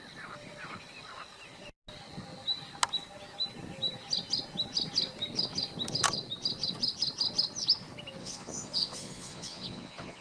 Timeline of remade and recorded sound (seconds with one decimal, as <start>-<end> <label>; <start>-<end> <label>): 0.0-8.2 recorded; 8.2-10.2 remade